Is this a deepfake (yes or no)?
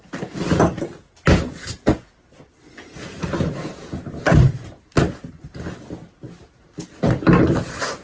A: no